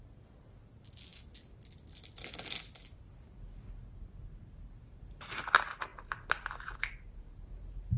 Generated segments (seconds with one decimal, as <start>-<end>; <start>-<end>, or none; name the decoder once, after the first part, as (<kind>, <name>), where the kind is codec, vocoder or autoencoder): none